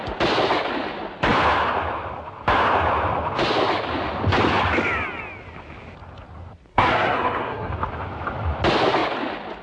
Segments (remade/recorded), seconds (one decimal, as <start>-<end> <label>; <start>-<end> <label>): 0.0-6.7 recorded; 6.7-7.7 remade; 7.7-9.6 recorded